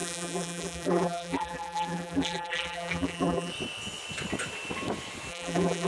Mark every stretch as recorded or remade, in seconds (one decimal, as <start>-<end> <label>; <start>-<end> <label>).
0.0-3.5 remade; 3.5-5.3 recorded; 5.3-5.9 remade